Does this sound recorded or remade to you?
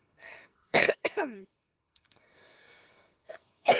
remade